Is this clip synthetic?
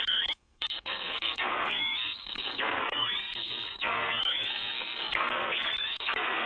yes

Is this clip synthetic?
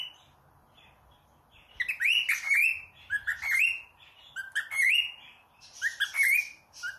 no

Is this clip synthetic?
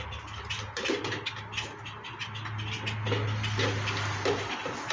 no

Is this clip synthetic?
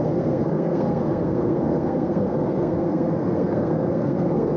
yes